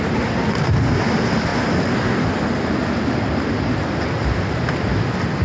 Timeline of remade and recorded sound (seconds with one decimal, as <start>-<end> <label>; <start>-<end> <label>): 0.0-5.4 recorded